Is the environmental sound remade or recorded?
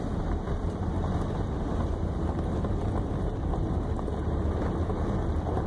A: recorded